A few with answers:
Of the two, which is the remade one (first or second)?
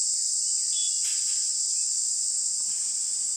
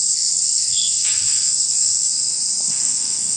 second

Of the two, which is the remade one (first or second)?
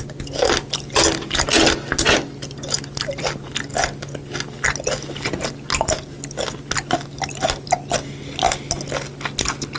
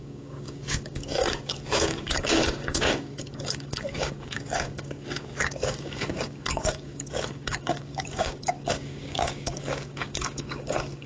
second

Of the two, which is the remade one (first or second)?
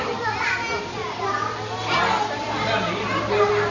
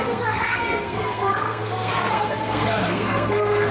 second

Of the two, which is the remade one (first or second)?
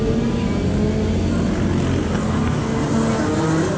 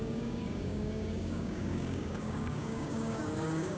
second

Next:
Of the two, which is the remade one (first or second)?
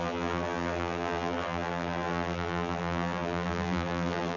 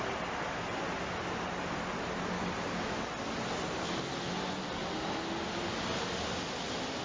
first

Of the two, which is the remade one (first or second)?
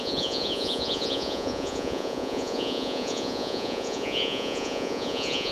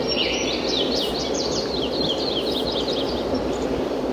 first